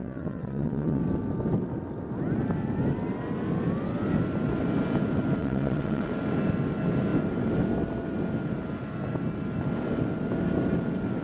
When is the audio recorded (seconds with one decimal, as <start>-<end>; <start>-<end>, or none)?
1.0-5.4; 6.1-11.2